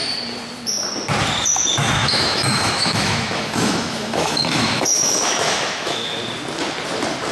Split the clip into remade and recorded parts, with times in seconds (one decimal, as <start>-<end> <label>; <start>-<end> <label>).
0.0-1.8 recorded; 1.8-6.2 remade; 6.2-7.3 recorded